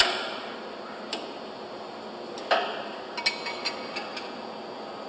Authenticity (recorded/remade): recorded